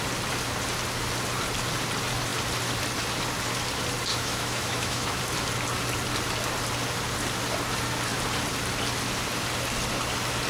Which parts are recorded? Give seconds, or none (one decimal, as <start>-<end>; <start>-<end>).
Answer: 0.0-4.1; 5.2-10.5